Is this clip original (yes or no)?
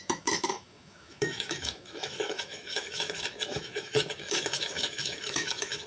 no